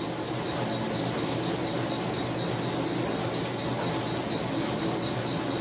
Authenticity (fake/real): real